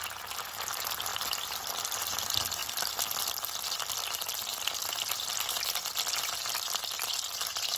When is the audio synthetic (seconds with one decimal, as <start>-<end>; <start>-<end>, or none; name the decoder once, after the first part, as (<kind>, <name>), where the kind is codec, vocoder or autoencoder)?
none